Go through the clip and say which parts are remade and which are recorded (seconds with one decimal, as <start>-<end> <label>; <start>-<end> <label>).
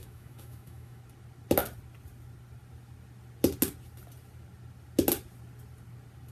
0.0-1.0 remade; 1.0-6.3 recorded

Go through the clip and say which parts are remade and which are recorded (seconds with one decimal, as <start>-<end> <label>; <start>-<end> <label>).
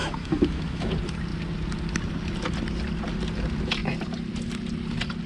0.0-0.9 remade; 0.9-5.3 recorded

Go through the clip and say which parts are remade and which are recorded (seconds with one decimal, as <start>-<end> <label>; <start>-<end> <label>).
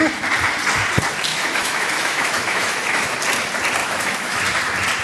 0.0-1.3 recorded; 1.3-3.1 remade; 3.1-3.8 recorded; 3.8-4.4 remade; 4.4-5.0 recorded